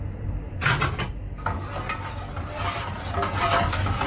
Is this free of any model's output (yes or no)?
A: yes